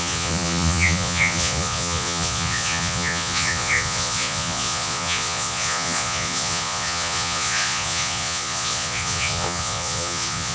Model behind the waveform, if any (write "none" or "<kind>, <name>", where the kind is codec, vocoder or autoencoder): vocoder, Vocos